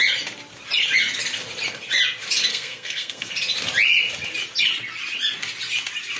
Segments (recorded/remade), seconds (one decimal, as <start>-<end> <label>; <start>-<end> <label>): 0.0-2.5 recorded; 2.5-3.3 remade; 3.3-6.2 recorded

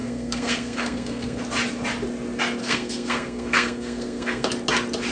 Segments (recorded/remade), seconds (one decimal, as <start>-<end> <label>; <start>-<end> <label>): 0.0-1.4 remade; 1.4-2.6 recorded; 2.6-4.5 remade; 4.5-5.1 recorded